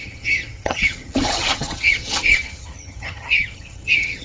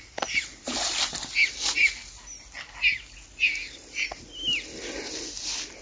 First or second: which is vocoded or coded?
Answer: first